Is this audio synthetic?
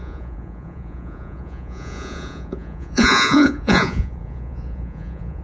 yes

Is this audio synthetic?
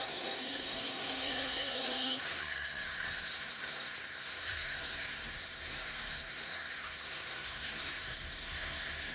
yes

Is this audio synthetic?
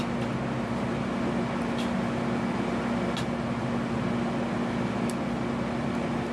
no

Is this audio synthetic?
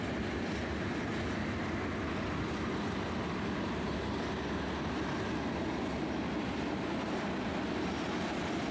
no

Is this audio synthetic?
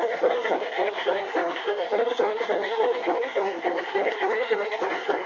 yes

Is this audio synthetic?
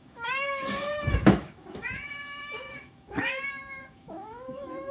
yes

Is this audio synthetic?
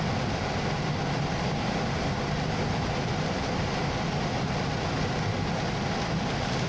no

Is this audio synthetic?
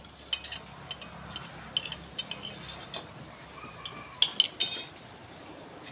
no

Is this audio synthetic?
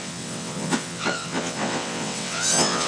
yes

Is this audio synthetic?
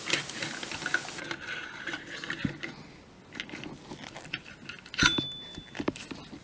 no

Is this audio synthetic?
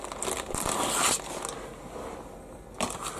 no